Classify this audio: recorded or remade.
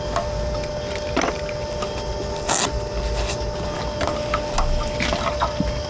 recorded